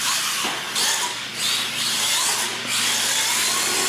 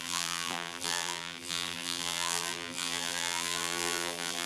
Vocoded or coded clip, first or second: second